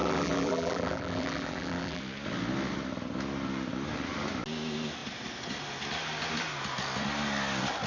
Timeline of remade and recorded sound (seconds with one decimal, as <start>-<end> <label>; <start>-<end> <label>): 0.0-2.0 remade; 2.0-7.9 recorded